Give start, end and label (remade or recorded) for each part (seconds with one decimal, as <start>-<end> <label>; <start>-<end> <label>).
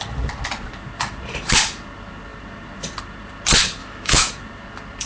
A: 0.0-3.8 recorded; 3.8-4.3 remade; 4.3-5.1 recorded